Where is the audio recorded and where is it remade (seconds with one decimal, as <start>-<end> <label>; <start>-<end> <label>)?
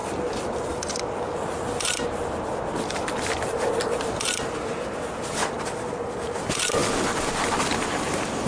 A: 0.0-8.5 recorded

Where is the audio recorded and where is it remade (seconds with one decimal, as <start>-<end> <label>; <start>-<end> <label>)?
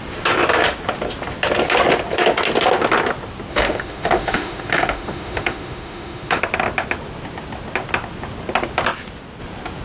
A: 0.0-3.5 recorded; 3.5-6.4 remade; 6.4-9.8 recorded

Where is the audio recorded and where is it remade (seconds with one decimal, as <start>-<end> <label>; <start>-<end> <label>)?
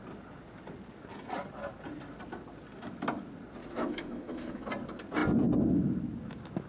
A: 0.0-3.6 recorded; 3.6-4.7 remade; 4.7-6.7 recorded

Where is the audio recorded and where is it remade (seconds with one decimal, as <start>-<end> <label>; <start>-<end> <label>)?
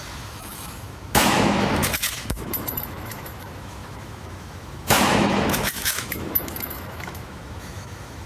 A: 0.0-8.3 remade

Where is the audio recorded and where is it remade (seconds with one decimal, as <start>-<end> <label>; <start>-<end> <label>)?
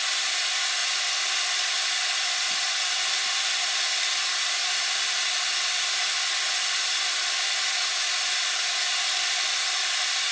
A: 0.0-10.3 recorded